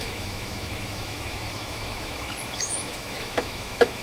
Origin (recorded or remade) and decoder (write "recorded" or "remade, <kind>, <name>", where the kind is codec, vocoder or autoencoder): remade, autoencoder, DAC-VAE